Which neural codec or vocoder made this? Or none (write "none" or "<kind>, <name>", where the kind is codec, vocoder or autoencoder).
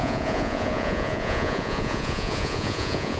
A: vocoder, Vocos